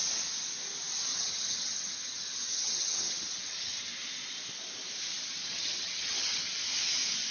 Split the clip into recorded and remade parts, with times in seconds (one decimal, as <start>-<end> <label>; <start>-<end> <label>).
0.0-1.1 recorded; 1.1-4.0 remade; 4.0-5.4 recorded; 5.4-6.5 remade; 6.5-7.3 recorded